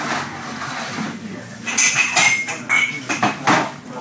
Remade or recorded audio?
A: recorded